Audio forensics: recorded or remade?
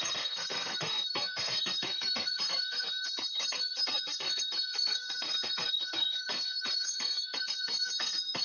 remade